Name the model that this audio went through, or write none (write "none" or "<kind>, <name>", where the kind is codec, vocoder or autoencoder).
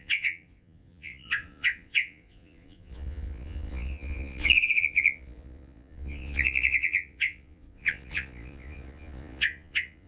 vocoder, Vocos